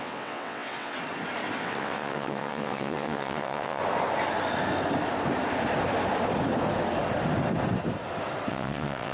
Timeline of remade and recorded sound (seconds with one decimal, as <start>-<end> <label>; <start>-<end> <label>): 0.0-0.9 remade; 0.9-1.6 recorded; 1.6-3.8 remade; 3.8-8.5 recorded; 8.5-9.1 remade